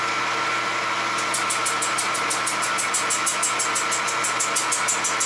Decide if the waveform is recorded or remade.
recorded